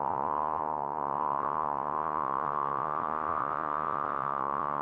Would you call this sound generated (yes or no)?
yes